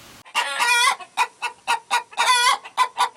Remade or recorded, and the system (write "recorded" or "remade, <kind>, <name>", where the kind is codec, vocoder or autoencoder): recorded